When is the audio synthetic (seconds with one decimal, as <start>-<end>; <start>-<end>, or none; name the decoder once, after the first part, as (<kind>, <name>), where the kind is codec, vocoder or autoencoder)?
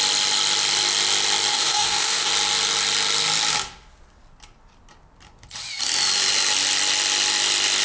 1.5-2.3 (codec, DAC)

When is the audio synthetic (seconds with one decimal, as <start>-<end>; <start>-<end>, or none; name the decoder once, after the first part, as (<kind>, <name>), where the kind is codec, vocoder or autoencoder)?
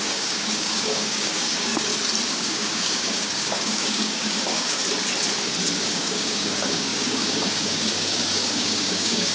0.0-1.7 (codec, DAC); 2.3-4.8; 5.8-9.3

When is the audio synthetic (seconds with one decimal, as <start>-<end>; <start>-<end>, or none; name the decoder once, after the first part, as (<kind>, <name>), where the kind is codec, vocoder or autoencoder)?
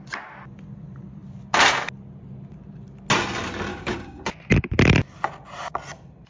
3.7-4.2 (codec, DAC)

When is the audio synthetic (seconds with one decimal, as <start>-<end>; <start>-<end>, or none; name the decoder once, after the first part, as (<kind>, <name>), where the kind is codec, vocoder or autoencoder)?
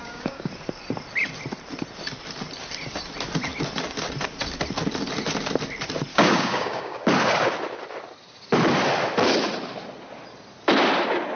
0.0-0.5 (codec, DAC); 6.1-7.0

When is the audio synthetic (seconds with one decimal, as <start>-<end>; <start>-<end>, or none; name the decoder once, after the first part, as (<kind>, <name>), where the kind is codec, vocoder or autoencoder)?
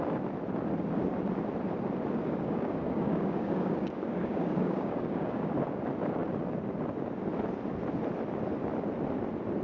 2.2-5.5 (codec, DAC)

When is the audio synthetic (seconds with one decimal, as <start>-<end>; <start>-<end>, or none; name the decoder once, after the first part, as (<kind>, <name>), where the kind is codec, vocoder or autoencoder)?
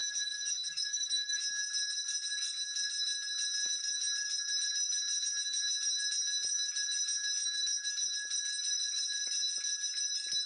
0.0-1.4 (codec, DAC)